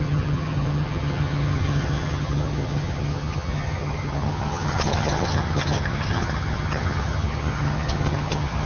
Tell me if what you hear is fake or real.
fake